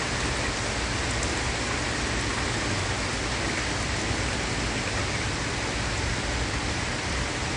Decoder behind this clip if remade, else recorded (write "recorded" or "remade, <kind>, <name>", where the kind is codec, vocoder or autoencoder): recorded